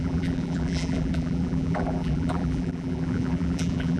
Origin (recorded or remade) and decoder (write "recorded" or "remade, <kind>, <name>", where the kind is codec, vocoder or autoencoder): remade, vocoder, BigVGAN v2